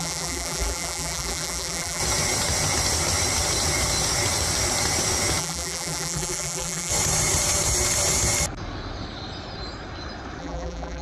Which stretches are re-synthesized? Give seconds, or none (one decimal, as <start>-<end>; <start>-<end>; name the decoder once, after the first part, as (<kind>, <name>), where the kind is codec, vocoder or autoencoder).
0.0-2.0 (vocoder, BigVGAN v2); 5.4-6.9; 10.4-11.0